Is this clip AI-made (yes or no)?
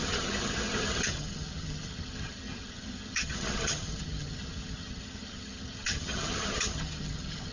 yes